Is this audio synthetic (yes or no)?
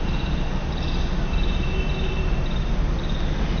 no